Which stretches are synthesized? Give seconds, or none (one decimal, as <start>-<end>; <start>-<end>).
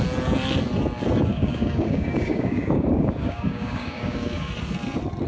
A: 1.3-4.5